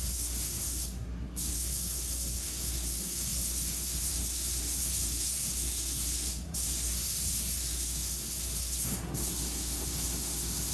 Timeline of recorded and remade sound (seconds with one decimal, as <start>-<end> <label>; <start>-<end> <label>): 0.0-10.7 remade